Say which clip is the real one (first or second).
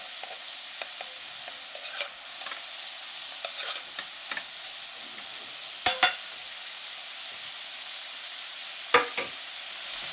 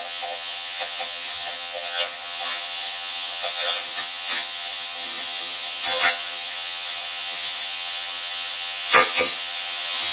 first